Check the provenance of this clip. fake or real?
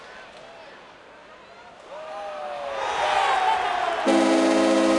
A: real